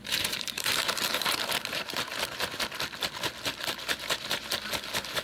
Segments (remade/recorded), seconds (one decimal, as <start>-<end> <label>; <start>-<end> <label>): 0.0-2.1 remade; 2.1-5.2 recorded